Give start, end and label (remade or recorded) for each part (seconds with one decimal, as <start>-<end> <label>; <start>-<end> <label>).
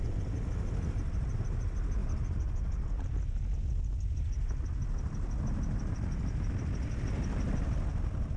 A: 0.0-8.4 recorded